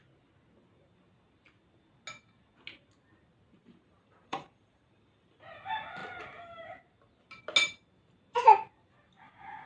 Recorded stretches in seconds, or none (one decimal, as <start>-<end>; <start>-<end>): 0.0-3.6; 5.4-9.7